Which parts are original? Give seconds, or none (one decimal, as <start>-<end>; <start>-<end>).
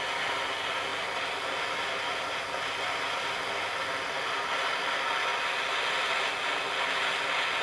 0.0-7.6